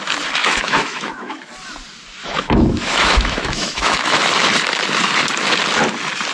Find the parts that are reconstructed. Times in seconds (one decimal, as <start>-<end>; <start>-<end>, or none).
0.4-1.5; 2.2-4.2